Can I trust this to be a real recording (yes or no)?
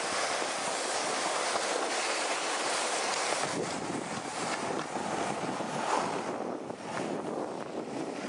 yes